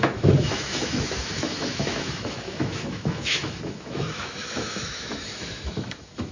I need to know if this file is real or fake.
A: fake